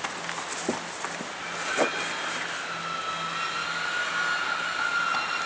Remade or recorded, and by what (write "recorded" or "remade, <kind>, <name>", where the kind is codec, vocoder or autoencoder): recorded